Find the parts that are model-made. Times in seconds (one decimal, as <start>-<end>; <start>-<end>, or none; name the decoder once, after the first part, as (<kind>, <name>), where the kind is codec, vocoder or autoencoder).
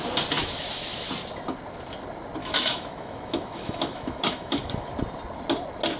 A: 0.4-1.1 (autoencoder, DAC-VAE); 2.4-4.9